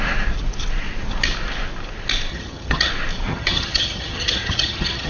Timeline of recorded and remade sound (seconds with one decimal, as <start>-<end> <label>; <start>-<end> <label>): 0.0-2.3 recorded; 2.3-2.9 remade; 2.9-3.3 recorded; 3.3-5.1 remade